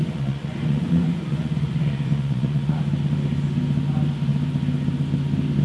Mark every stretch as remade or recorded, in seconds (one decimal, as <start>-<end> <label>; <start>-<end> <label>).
0.0-2.8 remade; 2.8-5.6 recorded

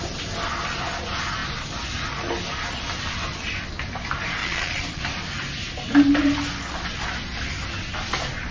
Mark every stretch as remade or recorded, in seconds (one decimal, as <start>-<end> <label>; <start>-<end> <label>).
0.0-4.4 recorded; 4.4-5.0 remade; 5.0-8.5 recorded

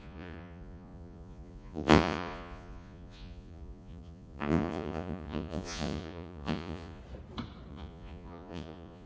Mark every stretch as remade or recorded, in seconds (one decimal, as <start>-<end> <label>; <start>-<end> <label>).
0.0-7.0 remade; 7.0-7.7 recorded; 7.7-9.1 remade

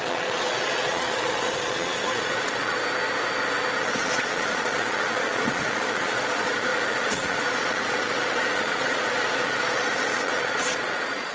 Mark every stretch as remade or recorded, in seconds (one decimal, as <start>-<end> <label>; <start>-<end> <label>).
0.0-2.8 remade; 2.8-3.8 recorded; 3.8-11.3 remade

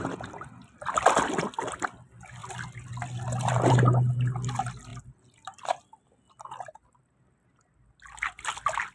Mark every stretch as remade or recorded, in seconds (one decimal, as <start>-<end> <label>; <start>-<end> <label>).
0.0-8.9 recorded